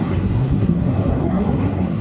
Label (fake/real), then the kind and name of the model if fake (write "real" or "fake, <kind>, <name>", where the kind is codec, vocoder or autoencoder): fake, codec, SNAC